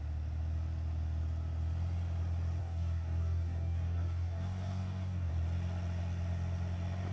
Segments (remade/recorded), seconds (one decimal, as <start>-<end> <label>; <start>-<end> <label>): 0.0-2.6 recorded; 2.6-5.3 remade; 5.3-7.1 recorded